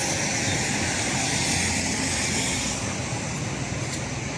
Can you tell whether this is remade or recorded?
recorded